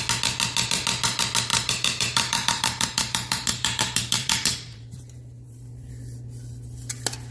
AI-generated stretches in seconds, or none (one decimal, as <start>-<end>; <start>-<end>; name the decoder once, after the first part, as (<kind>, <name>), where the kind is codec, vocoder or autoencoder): 1.5-5.9 (vocoder, BigVGAN v2)

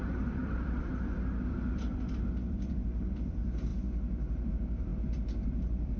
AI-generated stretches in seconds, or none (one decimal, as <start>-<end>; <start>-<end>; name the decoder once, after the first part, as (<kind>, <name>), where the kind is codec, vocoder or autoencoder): 0.0-3.7 (vocoder, BigVGAN v2); 4.5-4.9; 5.6-6.0

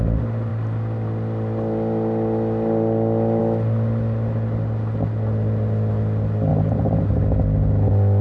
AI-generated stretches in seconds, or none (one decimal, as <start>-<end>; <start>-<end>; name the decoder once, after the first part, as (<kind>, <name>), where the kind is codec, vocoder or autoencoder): 6.5-7.2 (vocoder, BigVGAN v2)

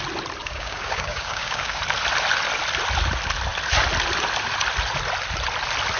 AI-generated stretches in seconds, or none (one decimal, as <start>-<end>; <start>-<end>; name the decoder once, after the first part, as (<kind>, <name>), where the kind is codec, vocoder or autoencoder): 0.4-1.8 (codec, DAC)

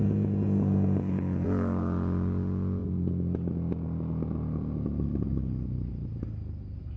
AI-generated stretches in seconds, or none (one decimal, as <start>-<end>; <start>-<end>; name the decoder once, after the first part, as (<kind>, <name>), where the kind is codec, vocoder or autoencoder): 0.0-2.8 (vocoder, Vocos)

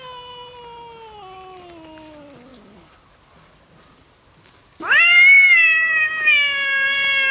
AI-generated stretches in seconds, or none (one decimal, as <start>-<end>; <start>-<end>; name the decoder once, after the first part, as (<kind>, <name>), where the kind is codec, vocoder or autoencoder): none

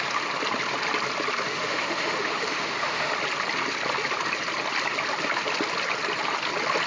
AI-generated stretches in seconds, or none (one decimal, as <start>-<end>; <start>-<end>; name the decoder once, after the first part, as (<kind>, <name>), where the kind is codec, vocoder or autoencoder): 1.5-3.1 (autoencoder, DAC-VAE)

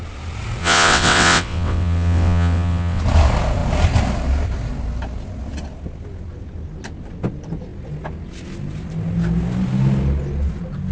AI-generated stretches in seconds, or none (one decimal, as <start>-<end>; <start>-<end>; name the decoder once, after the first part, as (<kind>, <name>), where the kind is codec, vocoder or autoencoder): 0.6-3.0 (vocoder, WaveNeXt)